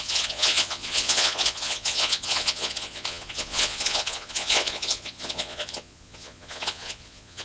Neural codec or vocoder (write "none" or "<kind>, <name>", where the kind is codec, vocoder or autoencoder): vocoder, Vocos